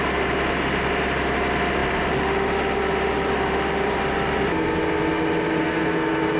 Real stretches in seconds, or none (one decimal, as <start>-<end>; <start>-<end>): 0.0-5.6